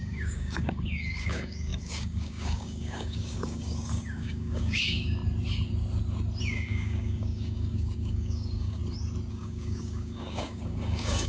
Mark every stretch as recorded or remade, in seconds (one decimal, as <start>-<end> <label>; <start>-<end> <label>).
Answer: 0.0-5.2 remade; 5.2-6.4 recorded; 6.4-8.8 remade; 8.8-9.3 recorded; 9.3-11.3 remade